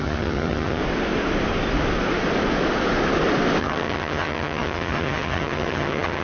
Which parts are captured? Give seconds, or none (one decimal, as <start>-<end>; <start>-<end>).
0.8-3.6